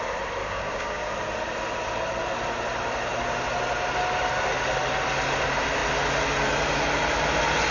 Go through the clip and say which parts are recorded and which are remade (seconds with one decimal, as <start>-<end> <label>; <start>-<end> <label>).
0.0-0.4 recorded; 0.4-1.1 remade; 1.1-7.7 recorded